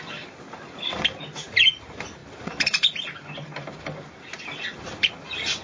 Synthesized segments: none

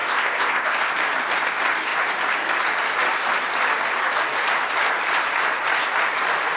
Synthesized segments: 0.0-0.8 (codec, ZipCodec)

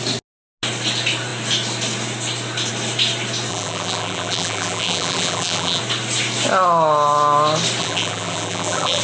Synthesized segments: 3.5-5.8 (vocoder, BigVGAN v2); 7.8-9.0